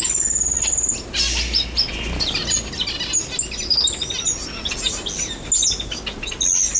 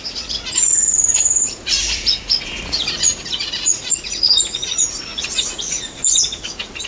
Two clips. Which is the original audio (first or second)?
first